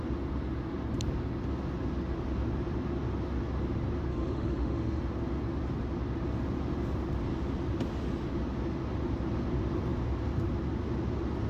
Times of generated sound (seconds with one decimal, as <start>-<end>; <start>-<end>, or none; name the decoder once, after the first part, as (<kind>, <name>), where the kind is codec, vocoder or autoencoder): 4.1-5.0 (autoencoder, DAC-VAE)